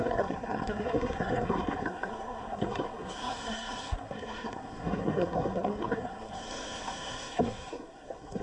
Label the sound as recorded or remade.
remade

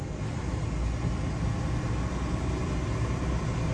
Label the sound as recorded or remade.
recorded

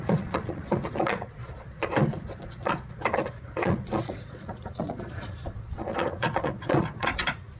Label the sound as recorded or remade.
remade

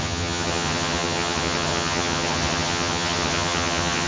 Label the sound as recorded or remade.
remade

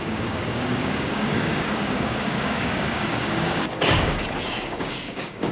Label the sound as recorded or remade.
remade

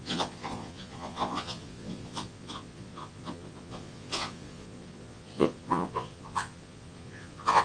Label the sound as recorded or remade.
remade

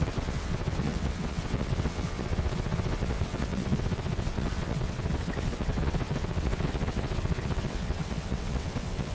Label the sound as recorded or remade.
remade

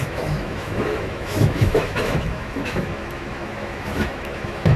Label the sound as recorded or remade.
remade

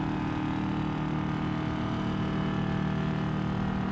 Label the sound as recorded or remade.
recorded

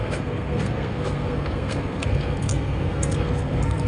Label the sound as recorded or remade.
remade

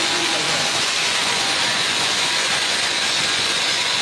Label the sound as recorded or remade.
remade